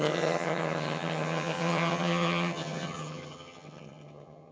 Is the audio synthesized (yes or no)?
yes